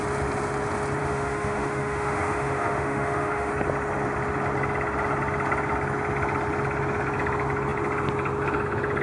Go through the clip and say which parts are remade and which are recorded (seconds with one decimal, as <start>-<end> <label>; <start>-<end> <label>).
0.0-1.0 recorded; 1.0-3.5 remade; 3.5-9.0 recorded